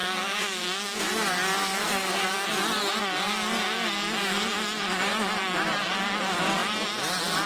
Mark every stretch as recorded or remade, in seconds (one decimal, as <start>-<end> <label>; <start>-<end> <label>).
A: 0.0-1.0 remade; 1.0-1.6 recorded; 1.6-2.3 remade; 2.3-7.5 recorded